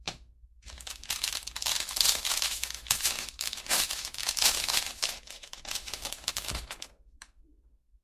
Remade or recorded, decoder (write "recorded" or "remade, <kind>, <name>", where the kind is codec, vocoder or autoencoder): remade, autoencoder, DAC-VAE